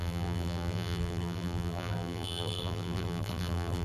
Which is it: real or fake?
fake